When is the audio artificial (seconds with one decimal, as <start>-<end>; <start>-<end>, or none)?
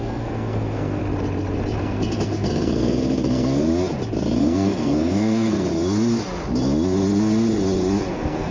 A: 0.0-1.0; 1.8-3.7; 4.4-5.7; 8.1-8.5